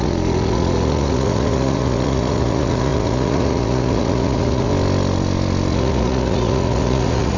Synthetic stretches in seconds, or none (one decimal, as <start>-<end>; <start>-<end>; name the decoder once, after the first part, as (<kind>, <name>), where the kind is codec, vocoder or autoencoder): 0.0-4.7 (vocoder, Vocos); 5.7-7.4